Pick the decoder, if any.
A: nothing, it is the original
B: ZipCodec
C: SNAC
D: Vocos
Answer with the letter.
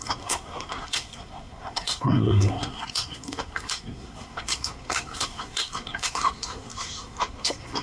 C